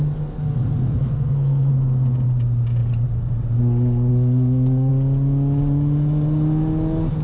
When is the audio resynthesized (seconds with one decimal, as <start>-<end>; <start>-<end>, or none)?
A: 0.8-1.7; 4.1-4.9